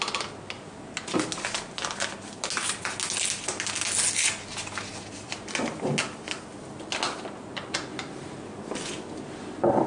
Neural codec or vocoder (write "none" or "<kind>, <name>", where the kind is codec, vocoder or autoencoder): none